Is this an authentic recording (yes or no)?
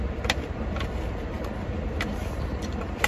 no